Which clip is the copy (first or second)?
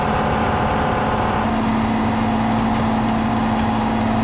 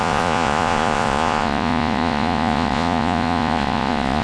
second